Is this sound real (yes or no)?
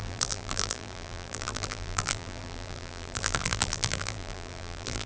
no